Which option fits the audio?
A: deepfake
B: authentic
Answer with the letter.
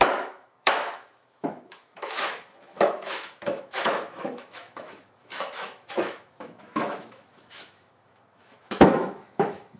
A